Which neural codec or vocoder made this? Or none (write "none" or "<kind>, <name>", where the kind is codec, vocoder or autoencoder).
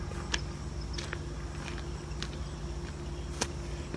none